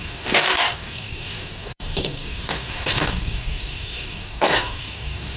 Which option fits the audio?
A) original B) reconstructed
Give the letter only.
B